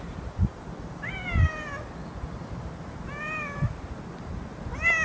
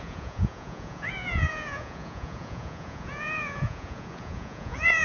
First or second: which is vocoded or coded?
second